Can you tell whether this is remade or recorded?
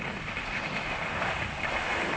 recorded